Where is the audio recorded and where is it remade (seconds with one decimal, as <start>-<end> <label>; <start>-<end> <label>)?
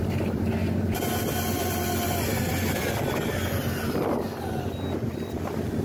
0.0-0.6 recorded; 0.6-2.8 remade; 2.8-5.8 recorded